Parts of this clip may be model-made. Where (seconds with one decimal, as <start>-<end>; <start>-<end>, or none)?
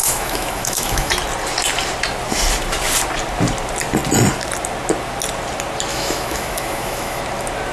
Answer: 0.0-1.1; 5.9-7.2